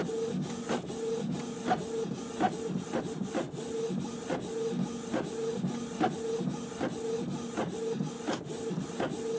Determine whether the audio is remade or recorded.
recorded